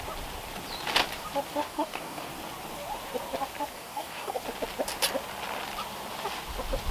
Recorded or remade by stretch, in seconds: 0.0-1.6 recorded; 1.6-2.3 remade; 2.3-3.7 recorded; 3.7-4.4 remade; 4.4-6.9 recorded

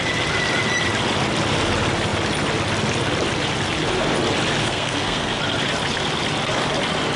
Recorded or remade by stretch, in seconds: 0.0-4.6 recorded; 4.6-5.4 remade; 5.4-7.2 recorded

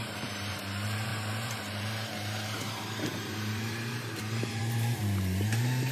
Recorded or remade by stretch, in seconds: 0.0-5.0 remade; 5.0-5.9 recorded

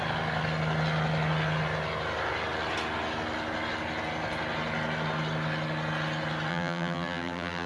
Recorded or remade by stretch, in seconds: 0.0-6.5 recorded; 6.5-7.7 remade

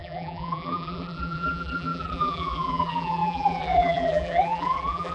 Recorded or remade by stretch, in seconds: 0.0-5.1 remade

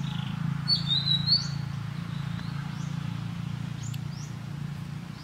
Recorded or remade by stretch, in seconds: 0.0-5.2 recorded